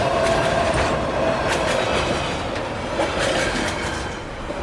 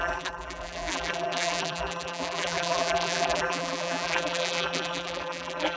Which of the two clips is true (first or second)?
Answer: first